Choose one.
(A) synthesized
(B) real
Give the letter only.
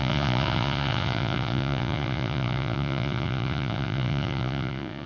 A